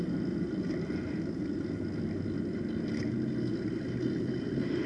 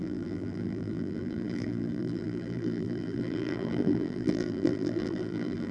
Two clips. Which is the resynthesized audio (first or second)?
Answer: second